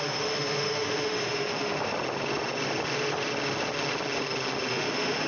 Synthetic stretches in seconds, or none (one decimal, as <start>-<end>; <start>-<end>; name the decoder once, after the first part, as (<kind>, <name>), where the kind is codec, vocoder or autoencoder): 0.0-1.9 (autoencoder, DAC-VAE); 4.7-5.3